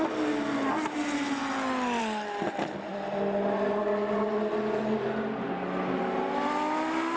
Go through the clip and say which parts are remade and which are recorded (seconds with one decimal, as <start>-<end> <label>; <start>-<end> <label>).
0.0-7.2 recorded